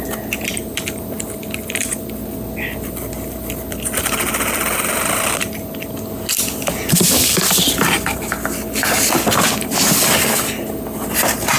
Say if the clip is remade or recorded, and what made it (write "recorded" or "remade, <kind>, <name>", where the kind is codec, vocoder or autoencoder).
recorded